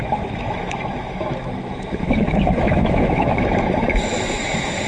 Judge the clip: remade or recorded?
remade